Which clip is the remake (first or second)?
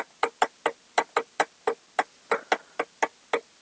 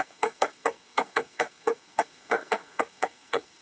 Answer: second